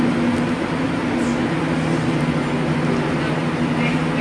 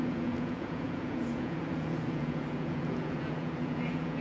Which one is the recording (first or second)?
first